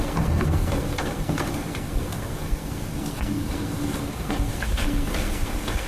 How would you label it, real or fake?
fake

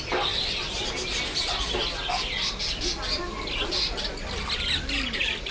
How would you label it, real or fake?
real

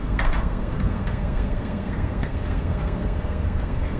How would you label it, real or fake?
fake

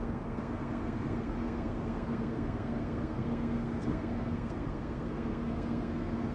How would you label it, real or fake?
fake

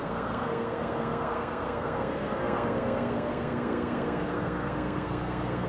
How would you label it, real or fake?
fake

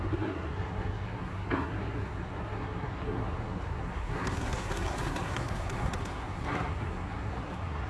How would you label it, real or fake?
fake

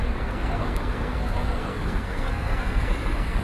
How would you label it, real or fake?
fake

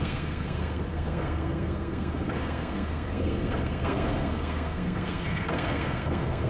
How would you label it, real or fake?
fake